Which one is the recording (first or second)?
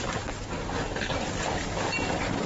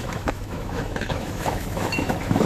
first